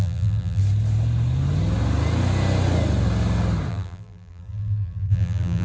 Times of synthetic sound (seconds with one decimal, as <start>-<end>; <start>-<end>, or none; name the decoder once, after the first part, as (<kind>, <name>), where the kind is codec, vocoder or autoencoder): 0.0-0.6 (vocoder, BigVGAN v2); 3.7-5.6